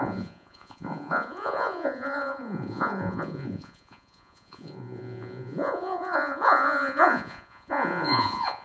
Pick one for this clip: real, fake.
fake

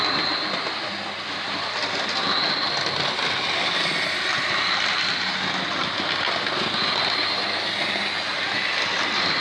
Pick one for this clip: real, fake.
real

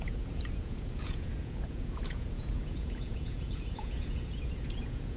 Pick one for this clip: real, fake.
fake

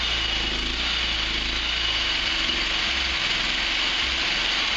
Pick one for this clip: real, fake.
real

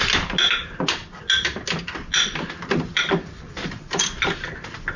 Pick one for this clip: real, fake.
real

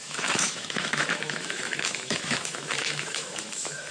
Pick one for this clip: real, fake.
fake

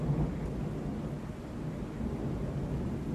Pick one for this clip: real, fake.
real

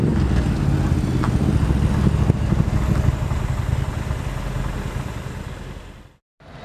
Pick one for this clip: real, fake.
real